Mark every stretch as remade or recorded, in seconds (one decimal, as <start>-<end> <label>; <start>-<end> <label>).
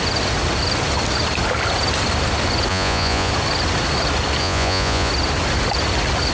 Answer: 0.0-2.7 recorded; 2.7-3.3 remade; 3.3-4.4 recorded; 4.4-5.1 remade; 5.1-6.3 recorded